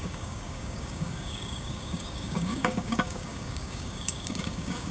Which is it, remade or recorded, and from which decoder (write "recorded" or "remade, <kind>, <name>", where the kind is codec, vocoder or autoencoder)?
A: remade, codec, DAC